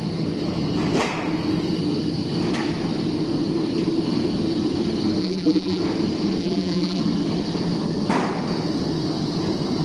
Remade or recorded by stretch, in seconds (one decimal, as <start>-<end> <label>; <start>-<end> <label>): 0.0-5.2 recorded; 5.2-5.8 remade; 5.8-6.4 recorded; 6.4-7.0 remade; 7.0-9.8 recorded